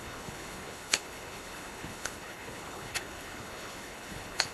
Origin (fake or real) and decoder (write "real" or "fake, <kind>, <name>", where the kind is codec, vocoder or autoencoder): fake, codec, HILCodec